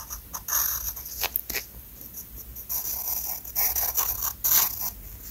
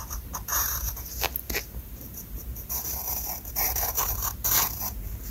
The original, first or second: first